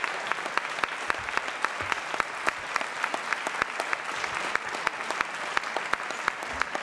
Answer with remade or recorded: recorded